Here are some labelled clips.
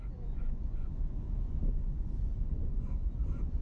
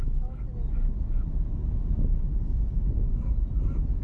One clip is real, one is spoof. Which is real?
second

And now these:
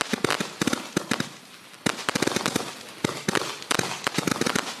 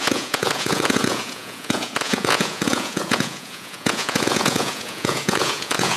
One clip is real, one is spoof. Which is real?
first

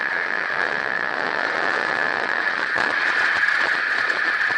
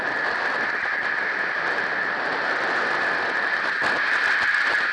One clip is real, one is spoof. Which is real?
second